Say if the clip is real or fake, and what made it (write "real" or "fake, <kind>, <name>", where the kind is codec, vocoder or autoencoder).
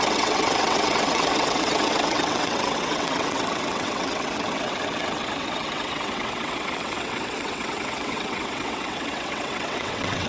fake, vocoder, WaveNeXt